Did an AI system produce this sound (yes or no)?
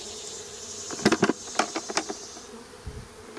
no